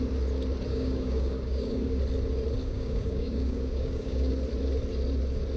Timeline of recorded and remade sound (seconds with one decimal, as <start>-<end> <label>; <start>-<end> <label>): 0.0-0.7 recorded; 0.7-2.0 remade; 2.0-2.6 recorded; 2.6-4.3 remade; 4.3-5.6 recorded